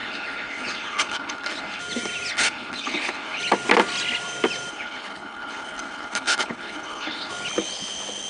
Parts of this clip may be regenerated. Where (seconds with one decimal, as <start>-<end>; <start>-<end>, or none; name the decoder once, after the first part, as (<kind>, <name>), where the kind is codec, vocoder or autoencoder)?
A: 0.0-1.8 (codec, HILCodec); 2.3-3.4; 4.7-7.3